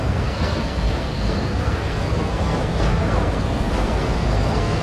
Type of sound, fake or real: fake